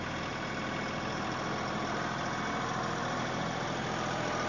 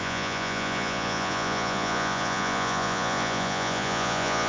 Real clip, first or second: first